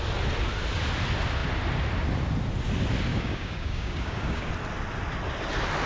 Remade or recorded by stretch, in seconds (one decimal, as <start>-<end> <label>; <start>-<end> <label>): 0.0-3.1 recorded; 3.1-4.5 remade; 4.5-5.9 recorded